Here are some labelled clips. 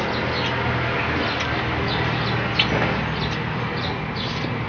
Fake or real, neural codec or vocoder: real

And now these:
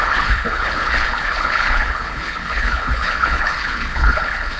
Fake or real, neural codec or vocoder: fake, codec, HILCodec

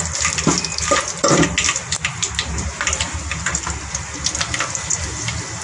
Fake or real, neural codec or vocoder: real